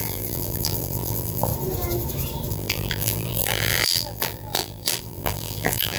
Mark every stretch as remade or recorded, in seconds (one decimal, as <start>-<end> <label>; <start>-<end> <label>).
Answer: 0.0-1.5 remade; 1.5-2.5 recorded; 2.5-6.0 remade